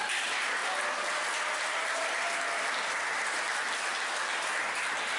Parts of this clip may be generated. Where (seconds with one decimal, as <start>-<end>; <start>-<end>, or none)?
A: none